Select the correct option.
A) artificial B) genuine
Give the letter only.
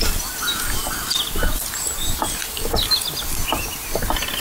B